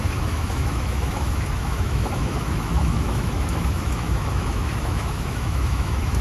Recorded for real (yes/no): no